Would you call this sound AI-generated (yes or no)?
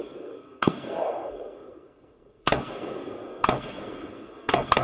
yes